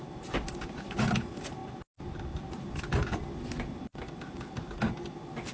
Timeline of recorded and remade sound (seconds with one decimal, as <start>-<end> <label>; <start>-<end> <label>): 0.0-5.5 recorded